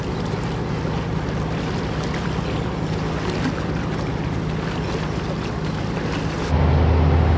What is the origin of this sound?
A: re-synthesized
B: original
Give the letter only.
B